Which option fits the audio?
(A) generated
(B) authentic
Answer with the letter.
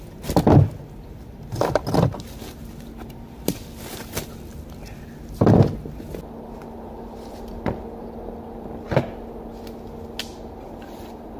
B